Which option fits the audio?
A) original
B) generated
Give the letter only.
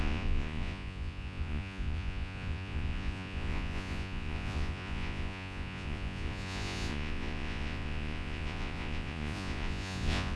B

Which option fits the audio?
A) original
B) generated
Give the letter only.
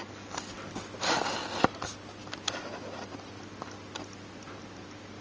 A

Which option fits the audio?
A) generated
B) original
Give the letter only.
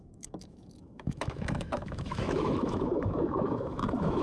A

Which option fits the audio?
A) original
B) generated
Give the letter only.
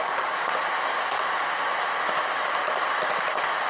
A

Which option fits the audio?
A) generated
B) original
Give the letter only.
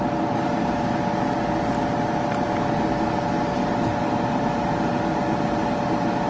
B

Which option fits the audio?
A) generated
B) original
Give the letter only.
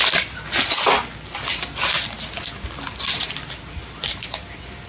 B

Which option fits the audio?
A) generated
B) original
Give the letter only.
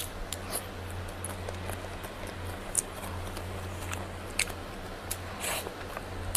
B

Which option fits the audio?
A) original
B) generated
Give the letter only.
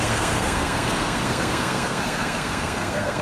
B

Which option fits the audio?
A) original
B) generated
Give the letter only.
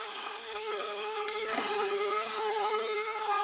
B